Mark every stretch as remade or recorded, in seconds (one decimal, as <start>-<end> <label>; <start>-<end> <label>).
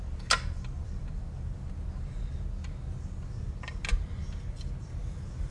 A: 0.0-5.5 recorded